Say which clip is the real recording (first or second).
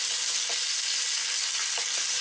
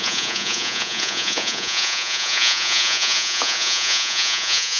first